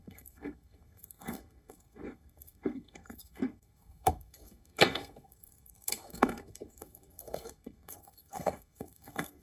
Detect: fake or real fake